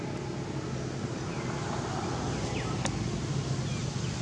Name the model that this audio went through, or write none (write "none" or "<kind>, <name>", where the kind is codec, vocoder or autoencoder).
none